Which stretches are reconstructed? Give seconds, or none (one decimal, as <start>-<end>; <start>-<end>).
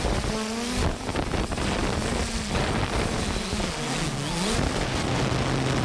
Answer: none